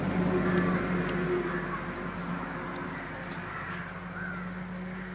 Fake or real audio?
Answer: real